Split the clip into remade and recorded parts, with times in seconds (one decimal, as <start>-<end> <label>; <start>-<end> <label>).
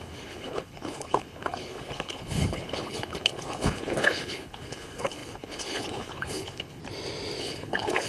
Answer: 0.0-6.8 remade; 6.8-7.4 recorded; 7.4-8.1 remade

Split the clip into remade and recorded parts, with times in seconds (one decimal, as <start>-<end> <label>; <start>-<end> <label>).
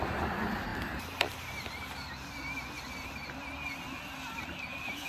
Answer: 0.0-5.1 recorded